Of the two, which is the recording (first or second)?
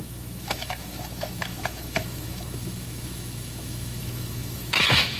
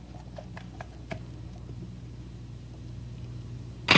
second